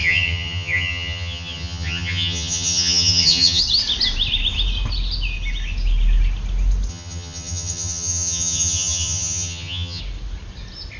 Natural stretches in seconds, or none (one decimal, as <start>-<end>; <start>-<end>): 3.6-6.9; 10.0-11.0